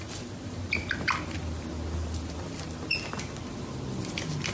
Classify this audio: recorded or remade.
recorded